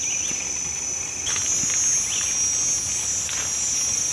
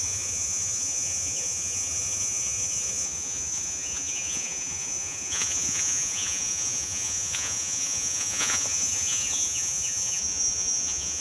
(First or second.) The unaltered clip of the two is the first